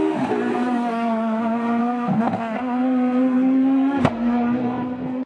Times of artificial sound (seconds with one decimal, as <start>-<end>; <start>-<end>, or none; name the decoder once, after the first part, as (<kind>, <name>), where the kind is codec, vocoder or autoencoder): 0.5-1.4 (codec, SNAC); 1.8-5.3